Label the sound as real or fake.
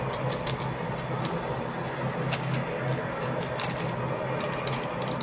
real